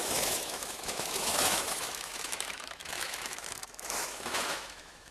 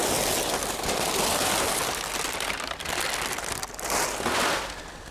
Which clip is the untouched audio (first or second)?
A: second